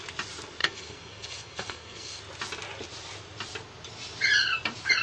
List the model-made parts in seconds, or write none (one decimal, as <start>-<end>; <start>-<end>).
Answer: 0.6-2.2